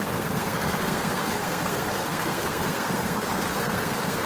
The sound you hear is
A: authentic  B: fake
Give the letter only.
B